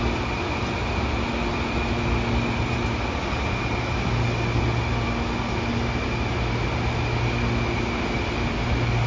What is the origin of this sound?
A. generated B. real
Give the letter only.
B